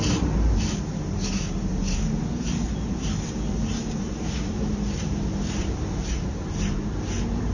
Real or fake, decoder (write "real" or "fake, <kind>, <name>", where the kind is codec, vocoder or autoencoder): fake, vocoder, BigVGAN v2